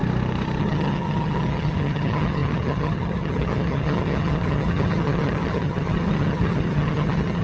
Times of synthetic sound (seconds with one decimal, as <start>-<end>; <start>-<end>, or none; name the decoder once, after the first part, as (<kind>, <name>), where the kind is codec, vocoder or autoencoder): 0.6-7.4 (vocoder, HiFi-GAN)